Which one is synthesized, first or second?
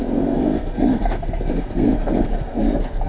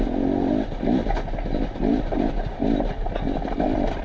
first